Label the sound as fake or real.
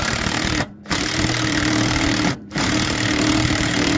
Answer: fake